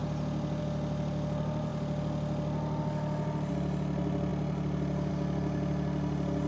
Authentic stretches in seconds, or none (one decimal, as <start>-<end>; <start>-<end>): 0.0-6.5